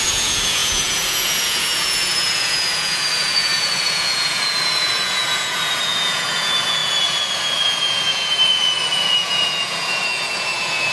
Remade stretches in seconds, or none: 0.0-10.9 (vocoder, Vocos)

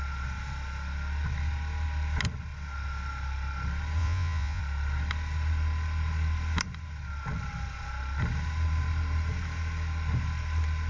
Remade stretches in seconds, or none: 4.0-4.6 (vocoder, Vocos)

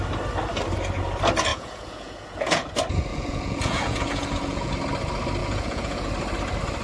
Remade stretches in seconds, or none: 1.5-2.7 (vocoder, Vocos); 3.1-4.7; 5.4-6.1

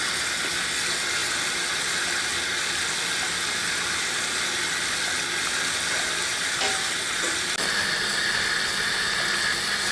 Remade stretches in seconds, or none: none